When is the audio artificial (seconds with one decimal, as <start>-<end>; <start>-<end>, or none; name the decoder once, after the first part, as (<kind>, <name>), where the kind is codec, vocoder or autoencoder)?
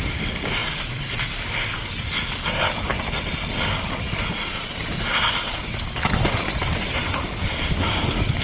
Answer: none